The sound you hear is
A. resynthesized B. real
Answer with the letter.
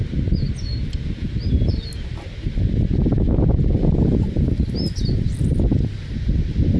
B